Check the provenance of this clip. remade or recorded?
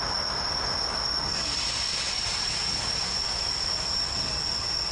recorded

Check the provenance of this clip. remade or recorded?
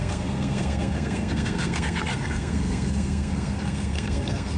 remade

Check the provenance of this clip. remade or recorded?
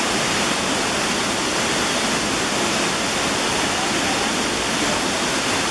recorded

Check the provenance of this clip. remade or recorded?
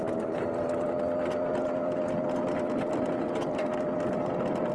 recorded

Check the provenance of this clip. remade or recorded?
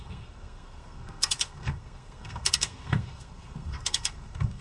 remade